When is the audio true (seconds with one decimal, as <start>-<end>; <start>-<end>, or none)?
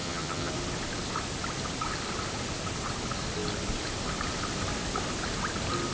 0.5-5.9